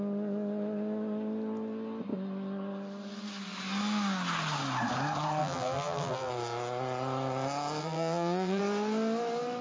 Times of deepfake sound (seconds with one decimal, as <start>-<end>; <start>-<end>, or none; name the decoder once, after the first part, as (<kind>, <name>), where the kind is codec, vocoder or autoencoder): 5.4-6.3 (vocoder, BigVGAN v2); 7.8-8.6